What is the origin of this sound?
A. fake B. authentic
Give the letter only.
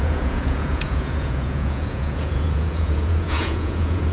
A